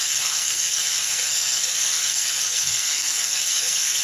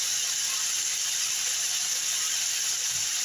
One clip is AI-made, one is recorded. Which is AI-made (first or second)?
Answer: first